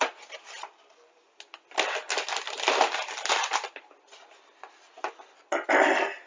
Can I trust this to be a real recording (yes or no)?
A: yes